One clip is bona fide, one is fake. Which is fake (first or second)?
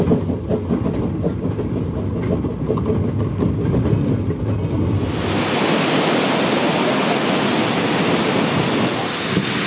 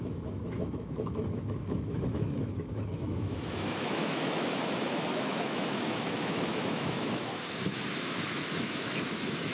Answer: second